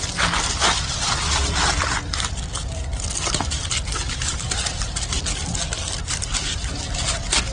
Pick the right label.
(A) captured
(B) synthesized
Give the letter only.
A